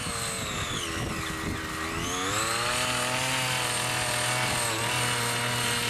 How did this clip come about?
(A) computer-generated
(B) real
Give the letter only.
B